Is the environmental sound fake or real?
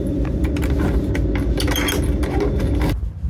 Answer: real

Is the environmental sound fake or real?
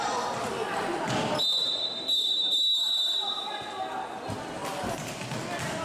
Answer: real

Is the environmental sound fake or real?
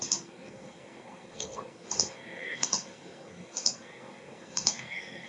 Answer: fake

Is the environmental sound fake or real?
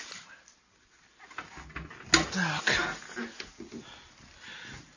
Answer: real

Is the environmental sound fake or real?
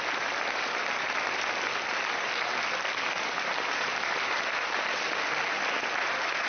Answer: real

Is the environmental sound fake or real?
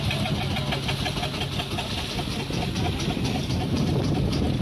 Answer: real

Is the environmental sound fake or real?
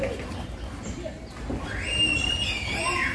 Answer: real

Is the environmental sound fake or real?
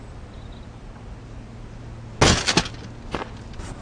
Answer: real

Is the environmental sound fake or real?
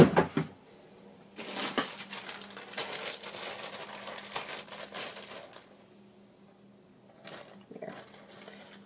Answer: real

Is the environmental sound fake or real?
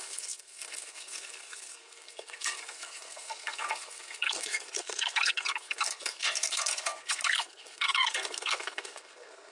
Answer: fake